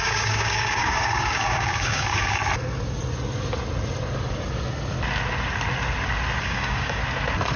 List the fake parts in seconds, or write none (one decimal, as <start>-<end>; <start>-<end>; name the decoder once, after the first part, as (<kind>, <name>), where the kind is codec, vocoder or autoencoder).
0.0-2.4 (codec, DAC); 6.4-7.0